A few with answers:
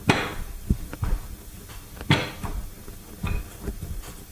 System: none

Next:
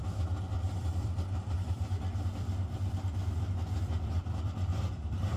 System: vocoder, BigVGAN v2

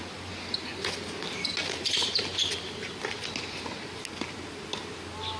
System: none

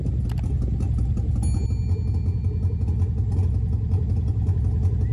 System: none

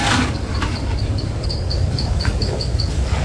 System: codec, DAC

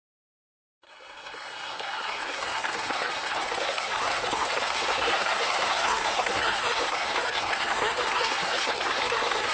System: codec, SNAC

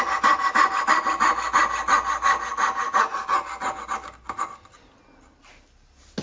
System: none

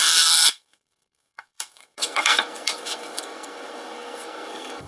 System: codec, SNAC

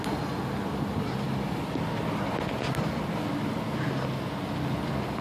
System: none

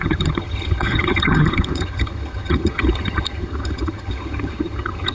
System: vocoder, HiFi-GAN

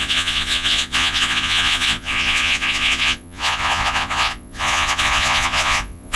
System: vocoder, Vocos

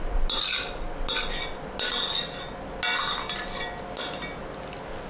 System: none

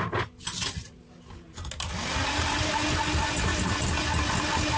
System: none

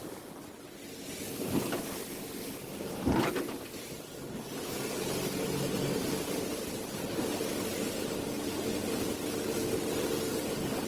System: none